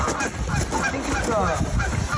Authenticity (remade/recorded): recorded